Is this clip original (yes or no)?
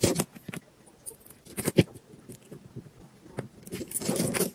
yes